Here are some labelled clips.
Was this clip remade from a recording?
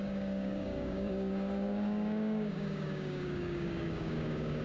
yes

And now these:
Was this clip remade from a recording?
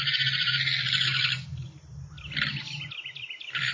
no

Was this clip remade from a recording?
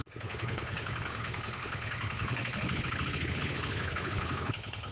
yes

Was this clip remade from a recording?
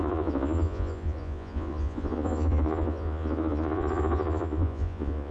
yes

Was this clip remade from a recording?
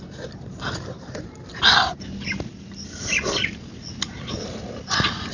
no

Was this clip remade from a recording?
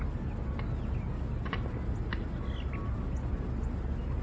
no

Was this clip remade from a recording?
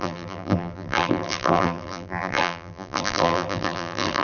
yes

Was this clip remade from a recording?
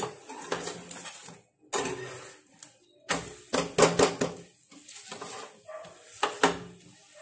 no